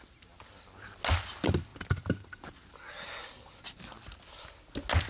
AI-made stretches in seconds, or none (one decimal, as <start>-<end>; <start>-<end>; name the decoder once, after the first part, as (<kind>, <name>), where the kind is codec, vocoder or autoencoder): none